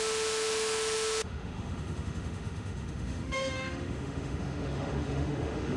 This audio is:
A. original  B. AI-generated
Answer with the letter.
B